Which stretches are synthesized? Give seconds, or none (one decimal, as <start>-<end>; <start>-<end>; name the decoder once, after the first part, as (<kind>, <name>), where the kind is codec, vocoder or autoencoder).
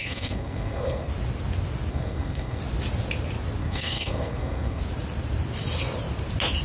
0.0-1.1 (codec, SNAC); 1.9-2.6; 3.6-4.8